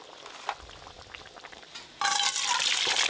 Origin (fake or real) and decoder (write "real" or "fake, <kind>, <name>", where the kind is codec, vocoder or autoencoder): real